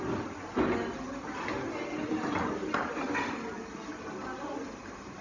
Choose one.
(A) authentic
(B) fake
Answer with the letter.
A